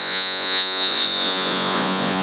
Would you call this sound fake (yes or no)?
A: yes